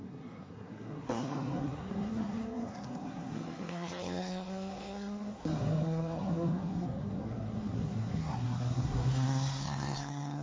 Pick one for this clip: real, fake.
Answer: fake